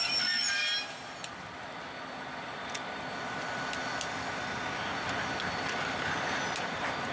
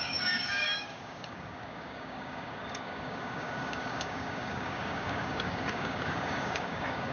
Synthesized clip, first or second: second